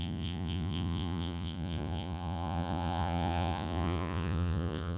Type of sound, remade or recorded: remade